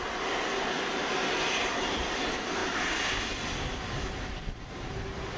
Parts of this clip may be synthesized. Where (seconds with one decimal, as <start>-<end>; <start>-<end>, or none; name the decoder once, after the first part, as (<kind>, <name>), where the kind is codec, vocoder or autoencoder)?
none